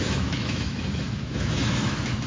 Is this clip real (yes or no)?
no